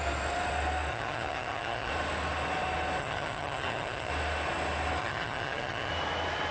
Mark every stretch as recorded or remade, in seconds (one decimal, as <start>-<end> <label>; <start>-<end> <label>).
0.0-0.9 recorded; 0.9-1.9 remade; 1.9-3.0 recorded; 3.0-4.1 remade; 4.1-5.0 recorded; 5.0-5.9 remade; 5.9-6.5 recorded